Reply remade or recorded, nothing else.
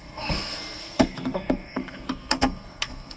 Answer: remade